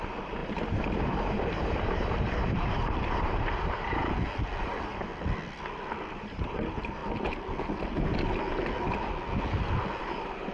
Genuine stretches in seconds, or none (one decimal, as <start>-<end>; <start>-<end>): 4.0-4.6; 5.1-6.1; 7.0-10.0